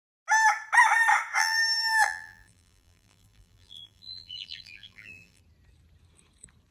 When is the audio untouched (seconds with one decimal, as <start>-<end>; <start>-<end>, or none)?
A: 0.0-1.4; 5.4-6.7